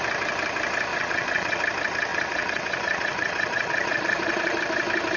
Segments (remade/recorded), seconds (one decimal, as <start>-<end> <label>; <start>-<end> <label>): 0.0-0.9 recorded; 0.9-1.6 remade; 1.6-2.1 recorded; 2.1-4.6 remade; 4.6-5.2 recorded